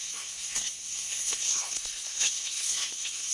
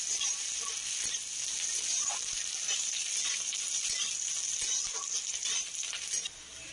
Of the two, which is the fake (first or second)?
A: first